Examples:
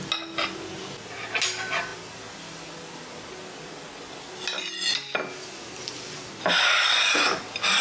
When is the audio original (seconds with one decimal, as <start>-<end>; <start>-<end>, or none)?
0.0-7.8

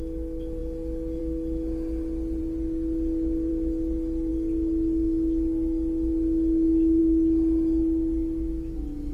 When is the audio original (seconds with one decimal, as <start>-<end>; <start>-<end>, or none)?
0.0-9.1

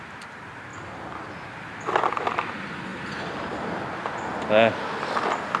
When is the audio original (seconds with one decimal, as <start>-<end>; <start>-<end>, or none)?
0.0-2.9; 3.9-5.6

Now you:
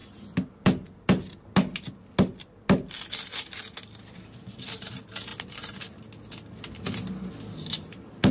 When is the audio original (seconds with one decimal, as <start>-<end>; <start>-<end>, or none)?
0.0-8.3

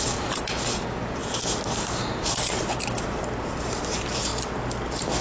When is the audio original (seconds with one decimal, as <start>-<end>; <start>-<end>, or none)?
4.3-5.2

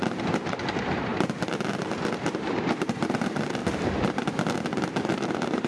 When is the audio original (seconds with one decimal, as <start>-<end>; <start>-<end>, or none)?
1.1-2.0; 3.6-5.0

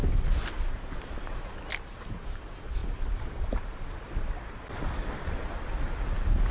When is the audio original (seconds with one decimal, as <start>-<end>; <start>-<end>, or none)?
0.0-2.8; 5.1-6.5